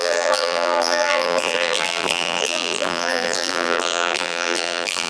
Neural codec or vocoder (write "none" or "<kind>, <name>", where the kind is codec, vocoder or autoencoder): vocoder, BigVGAN v2